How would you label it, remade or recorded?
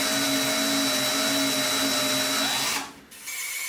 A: recorded